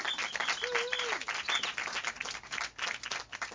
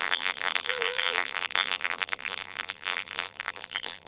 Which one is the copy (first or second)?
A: second